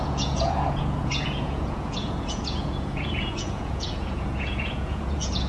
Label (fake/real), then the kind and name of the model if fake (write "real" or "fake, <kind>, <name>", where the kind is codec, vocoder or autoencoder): fake, vocoder, Vocos